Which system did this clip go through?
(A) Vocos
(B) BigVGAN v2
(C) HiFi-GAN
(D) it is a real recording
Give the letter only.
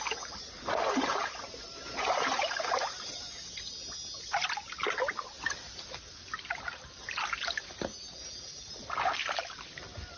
D